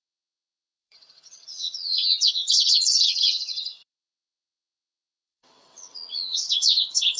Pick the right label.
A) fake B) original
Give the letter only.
A